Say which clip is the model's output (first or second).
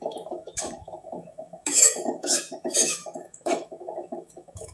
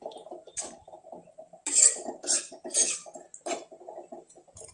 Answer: first